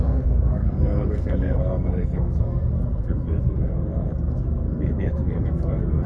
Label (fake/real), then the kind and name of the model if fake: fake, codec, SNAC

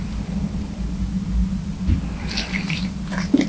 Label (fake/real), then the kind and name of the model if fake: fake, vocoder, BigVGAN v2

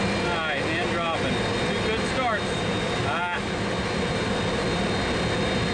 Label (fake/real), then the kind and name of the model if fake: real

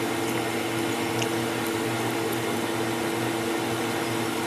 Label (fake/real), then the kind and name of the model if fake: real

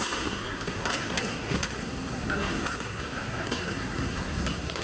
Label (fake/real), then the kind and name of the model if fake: fake, codec, SNAC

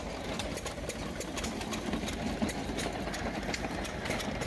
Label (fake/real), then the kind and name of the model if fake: real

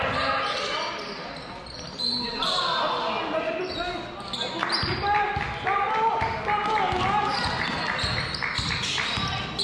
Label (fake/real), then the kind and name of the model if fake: real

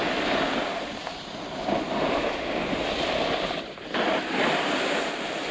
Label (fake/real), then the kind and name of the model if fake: real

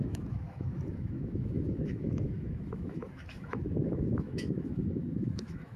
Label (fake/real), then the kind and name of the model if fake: fake, autoencoder, DAC-VAE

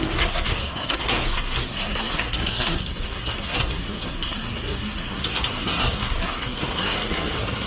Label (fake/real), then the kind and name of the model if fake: fake, codec, SNAC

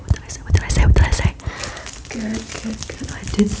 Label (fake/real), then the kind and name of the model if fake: real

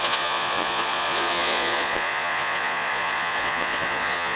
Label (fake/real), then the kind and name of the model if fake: fake, vocoder, Vocos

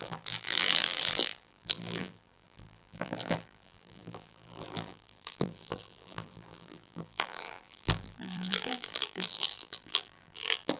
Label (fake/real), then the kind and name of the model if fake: fake, vocoder, BigVGAN v2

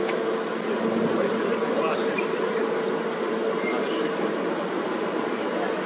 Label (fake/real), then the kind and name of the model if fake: real